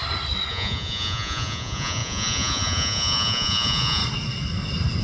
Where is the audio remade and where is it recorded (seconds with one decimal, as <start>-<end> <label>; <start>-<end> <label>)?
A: 0.0-0.5 recorded; 0.5-4.0 remade; 4.0-5.0 recorded